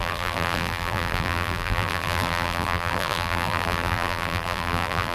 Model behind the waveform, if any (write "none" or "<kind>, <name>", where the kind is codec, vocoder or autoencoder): vocoder, BigVGAN v2